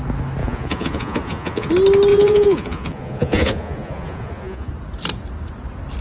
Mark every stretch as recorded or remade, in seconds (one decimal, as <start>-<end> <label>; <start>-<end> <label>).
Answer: 0.0-0.4 recorded; 0.4-1.7 remade; 1.7-2.1 recorded; 2.1-4.7 remade; 4.7-6.0 recorded